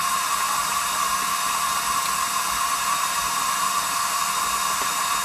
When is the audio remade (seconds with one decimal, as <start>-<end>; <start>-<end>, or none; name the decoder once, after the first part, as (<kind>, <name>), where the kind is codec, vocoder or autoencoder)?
none